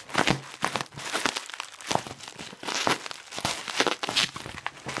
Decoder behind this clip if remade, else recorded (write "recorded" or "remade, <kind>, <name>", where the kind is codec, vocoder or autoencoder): recorded